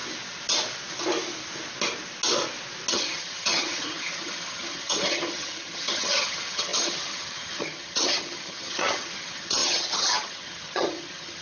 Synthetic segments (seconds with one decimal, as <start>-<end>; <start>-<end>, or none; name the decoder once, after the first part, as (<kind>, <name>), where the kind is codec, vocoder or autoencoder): 2.9-11.4 (vocoder, HiFi-GAN)